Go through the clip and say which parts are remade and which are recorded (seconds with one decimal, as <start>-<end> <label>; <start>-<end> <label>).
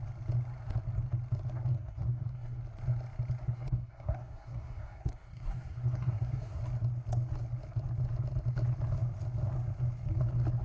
0.0-1.7 recorded; 1.7-2.6 remade; 2.6-3.4 recorded; 3.4-6.6 remade; 6.6-10.6 recorded